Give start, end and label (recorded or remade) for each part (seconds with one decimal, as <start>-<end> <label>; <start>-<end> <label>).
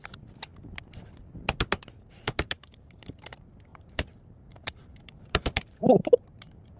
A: 0.0-0.5 remade; 0.5-2.1 recorded; 2.1-6.8 remade